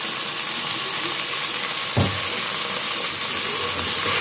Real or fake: real